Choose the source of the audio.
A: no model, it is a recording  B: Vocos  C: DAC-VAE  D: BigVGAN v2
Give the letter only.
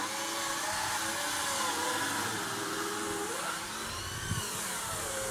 A